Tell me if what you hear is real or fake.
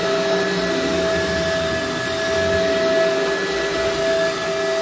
real